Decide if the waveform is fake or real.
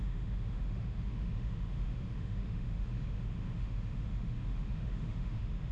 fake